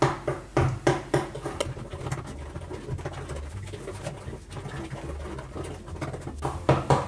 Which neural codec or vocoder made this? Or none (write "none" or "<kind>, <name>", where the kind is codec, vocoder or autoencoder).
none